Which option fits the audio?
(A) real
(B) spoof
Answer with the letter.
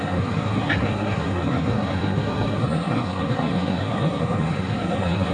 B